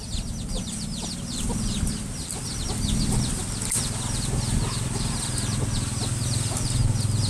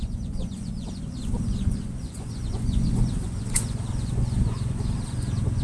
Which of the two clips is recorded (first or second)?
first